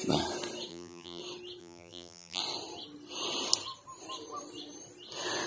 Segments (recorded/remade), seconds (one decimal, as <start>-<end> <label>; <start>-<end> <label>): 0.0-0.7 recorded; 0.7-1.2 remade; 1.2-1.6 recorded; 1.6-2.4 remade; 2.4-5.5 recorded